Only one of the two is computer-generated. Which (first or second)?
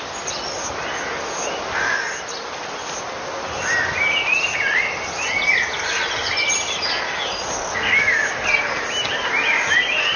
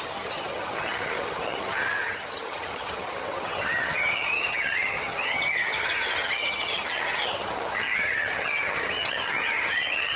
second